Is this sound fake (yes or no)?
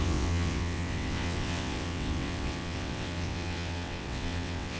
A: yes